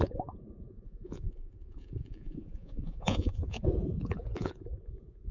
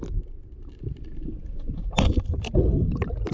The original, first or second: second